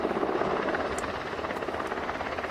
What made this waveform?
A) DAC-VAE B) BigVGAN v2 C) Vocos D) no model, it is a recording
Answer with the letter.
B